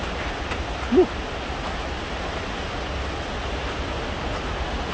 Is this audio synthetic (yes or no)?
no